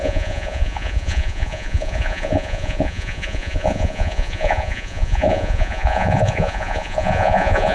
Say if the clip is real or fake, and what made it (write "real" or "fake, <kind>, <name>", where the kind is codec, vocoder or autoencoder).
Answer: fake, vocoder, Vocos